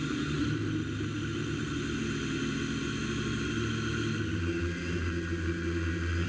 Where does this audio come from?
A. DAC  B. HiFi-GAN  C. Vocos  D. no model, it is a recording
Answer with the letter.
D